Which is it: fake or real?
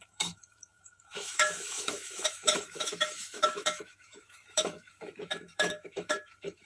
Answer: fake